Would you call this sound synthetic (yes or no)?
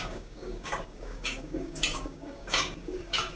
yes